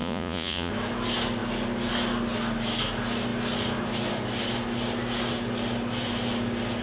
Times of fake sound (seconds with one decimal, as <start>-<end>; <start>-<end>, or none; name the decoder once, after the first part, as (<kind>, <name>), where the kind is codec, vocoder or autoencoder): 0.0-0.7 (vocoder, Vocos)